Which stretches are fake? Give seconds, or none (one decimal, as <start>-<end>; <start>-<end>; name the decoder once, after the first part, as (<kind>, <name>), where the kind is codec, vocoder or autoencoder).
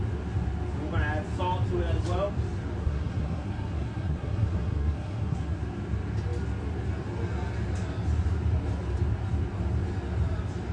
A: 2.8-5.6 (codec, SNAC)